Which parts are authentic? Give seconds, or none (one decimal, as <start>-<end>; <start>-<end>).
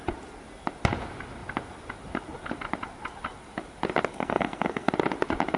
0.0-4.1; 4.9-5.6